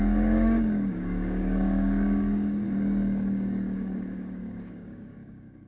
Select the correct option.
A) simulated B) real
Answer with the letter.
A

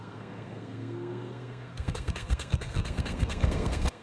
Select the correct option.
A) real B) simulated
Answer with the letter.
B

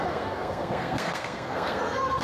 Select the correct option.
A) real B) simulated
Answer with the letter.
B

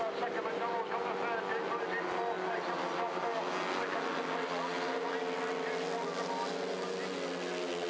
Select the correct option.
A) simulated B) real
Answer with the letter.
B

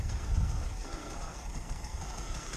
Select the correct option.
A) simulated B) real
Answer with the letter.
A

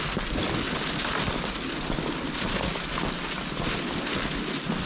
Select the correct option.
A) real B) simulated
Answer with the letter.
A